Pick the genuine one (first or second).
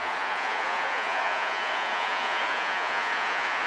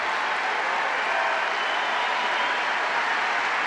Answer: second